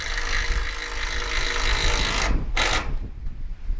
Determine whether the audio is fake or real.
real